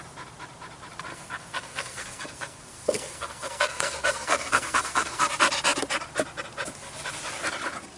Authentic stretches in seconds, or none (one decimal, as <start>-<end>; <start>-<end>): 0.0-1.1; 5.3-8.0